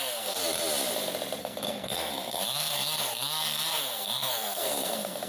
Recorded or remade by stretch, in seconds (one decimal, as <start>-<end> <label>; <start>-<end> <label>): 0.0-0.4 remade; 0.4-1.4 recorded; 1.4-5.3 remade